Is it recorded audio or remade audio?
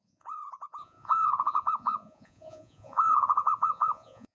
remade